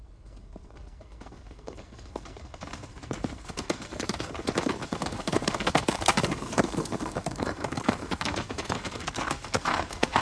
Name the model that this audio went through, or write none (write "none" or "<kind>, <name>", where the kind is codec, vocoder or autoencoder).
codec, SNAC